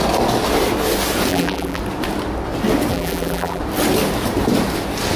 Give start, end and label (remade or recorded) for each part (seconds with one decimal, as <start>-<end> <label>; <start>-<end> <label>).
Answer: 0.0-1.3 recorded; 1.3-1.8 remade; 1.8-2.9 recorded; 2.9-3.6 remade; 3.6-5.2 recorded